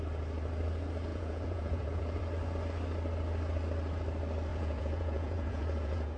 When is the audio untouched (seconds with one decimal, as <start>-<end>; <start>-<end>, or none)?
0.0-1.1; 2.2-4.5